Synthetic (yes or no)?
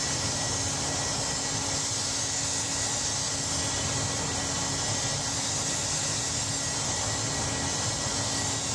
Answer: no